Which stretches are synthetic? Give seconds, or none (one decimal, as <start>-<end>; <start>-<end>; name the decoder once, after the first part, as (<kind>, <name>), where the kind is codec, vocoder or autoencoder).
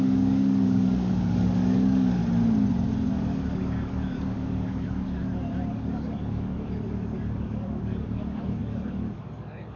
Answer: 0.0-2.2 (codec, DAC); 3.1-5.2; 5.7-9.8